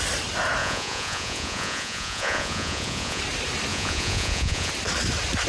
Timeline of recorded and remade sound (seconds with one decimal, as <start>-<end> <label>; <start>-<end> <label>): 0.0-0.6 recorded; 0.6-3.2 remade; 3.2-3.7 recorded; 3.7-4.7 remade; 4.7-5.5 recorded